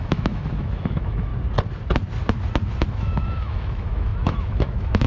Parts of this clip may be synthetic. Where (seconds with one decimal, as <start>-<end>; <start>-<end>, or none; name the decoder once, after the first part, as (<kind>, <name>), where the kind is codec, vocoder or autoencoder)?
0.0-1.3 (autoencoder, DAC-VAE); 2.9-5.1